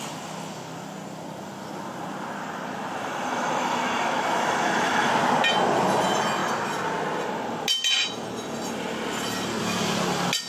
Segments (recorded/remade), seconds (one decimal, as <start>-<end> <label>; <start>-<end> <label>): 0.0-3.0 recorded; 3.0-5.1 remade; 5.1-10.5 recorded